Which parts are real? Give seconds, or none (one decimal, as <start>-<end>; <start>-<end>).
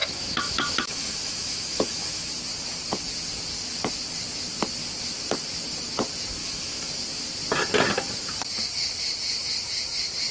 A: 2.3-6.4; 6.9-10.3